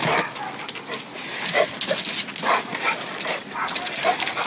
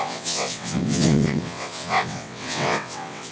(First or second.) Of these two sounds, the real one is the first